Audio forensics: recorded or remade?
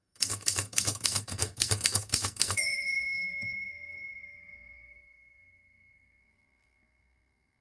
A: remade